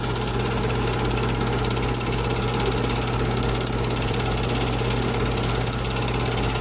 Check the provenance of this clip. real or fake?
fake